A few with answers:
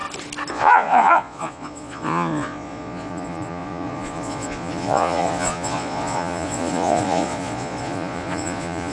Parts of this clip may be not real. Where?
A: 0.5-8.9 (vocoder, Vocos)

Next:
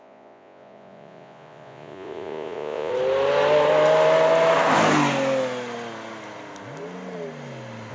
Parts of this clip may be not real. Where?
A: 0.0-2.9 (vocoder, Vocos)

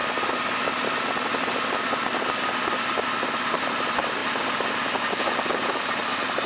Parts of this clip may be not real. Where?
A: none

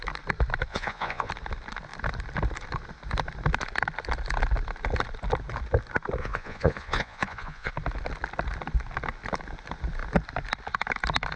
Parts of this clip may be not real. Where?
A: 0.7-1.3 (vocoder, Vocos); 6.2-7.7

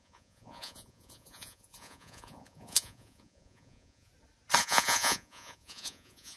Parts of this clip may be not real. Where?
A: 0.0-4.1 (vocoder, Vocos); 4.6-6.4

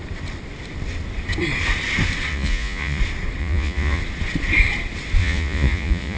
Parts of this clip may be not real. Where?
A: 2.3-3.0 (vocoder, Vocos); 3.4-4.0; 5.2-6.2